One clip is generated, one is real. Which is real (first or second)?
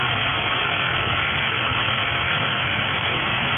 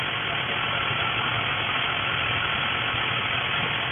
second